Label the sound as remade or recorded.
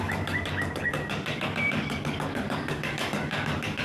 remade